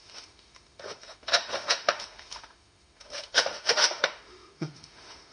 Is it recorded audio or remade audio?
remade